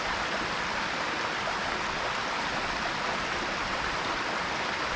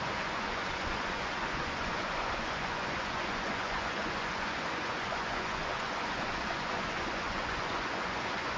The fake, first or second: second